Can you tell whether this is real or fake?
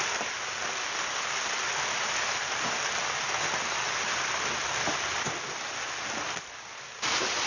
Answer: real